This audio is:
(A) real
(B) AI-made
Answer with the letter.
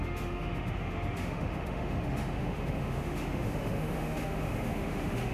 B